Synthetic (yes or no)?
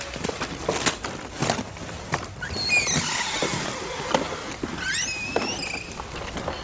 no